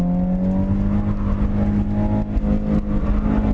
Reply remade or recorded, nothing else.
recorded